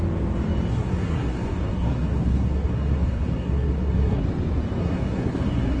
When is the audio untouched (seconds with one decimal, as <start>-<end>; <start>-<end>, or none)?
0.0-0.7; 4.2-4.8